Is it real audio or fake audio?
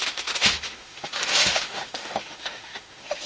fake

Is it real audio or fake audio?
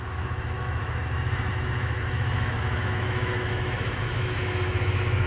fake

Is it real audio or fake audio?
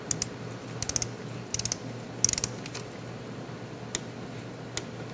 real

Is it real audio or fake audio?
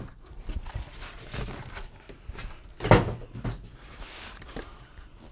real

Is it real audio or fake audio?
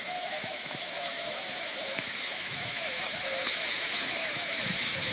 fake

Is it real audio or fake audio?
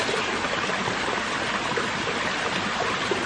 real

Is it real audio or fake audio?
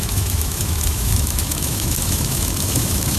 fake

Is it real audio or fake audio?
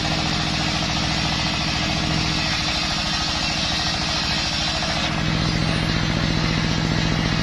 real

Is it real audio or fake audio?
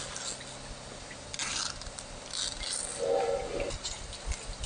real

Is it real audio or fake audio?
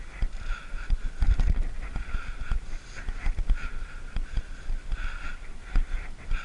real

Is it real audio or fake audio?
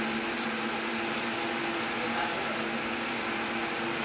real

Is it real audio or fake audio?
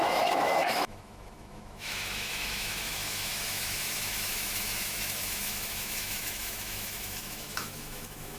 fake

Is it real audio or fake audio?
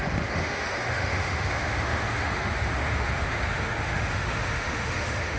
fake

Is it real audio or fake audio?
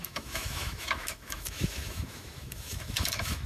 fake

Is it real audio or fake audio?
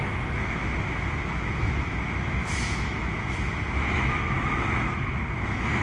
fake